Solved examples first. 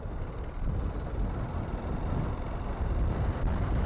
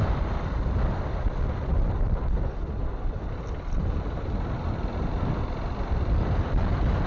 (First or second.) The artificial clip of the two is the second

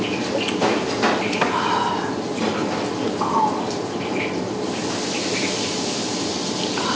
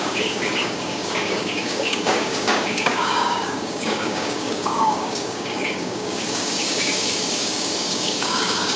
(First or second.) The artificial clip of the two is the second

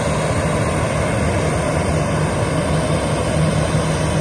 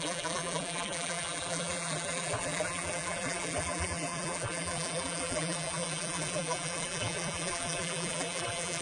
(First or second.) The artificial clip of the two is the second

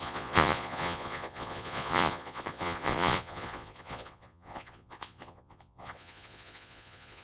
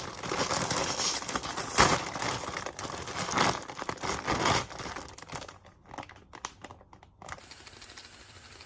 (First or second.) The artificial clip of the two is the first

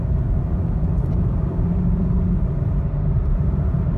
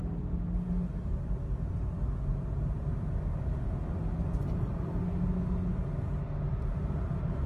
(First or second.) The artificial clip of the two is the first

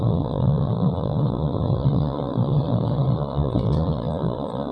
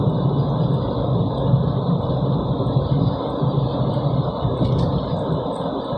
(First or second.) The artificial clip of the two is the first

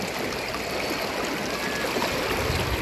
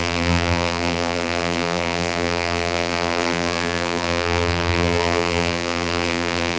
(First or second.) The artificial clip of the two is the second